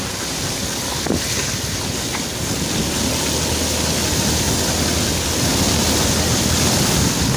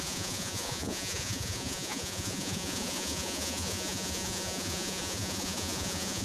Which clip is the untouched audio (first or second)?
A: first